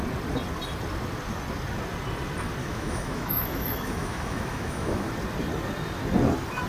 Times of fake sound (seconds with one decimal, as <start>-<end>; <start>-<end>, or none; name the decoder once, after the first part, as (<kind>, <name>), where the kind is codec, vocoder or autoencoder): 2.6-5.1 (autoencoder, DAC-VAE)